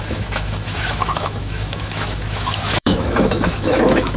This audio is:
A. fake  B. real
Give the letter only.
A